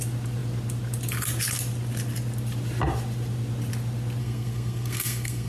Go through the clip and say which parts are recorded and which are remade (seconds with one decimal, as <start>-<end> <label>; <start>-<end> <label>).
0.0-4.2 recorded; 4.2-5.5 remade